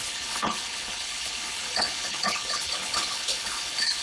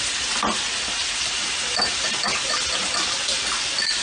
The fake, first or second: first